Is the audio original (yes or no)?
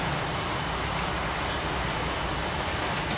yes